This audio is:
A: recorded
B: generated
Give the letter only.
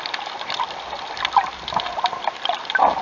A